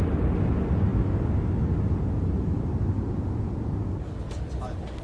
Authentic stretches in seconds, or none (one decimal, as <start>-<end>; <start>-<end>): 0.0-5.0